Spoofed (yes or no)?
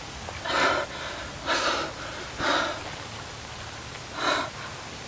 no